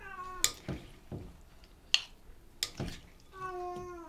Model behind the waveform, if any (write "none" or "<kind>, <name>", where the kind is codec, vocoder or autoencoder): none